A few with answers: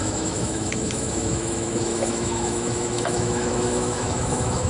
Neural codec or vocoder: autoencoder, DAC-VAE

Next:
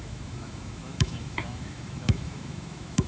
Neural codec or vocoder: autoencoder, DAC-VAE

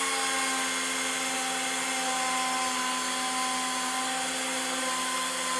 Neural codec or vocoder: none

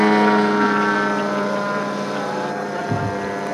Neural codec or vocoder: none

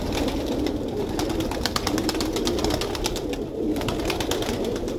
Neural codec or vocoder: none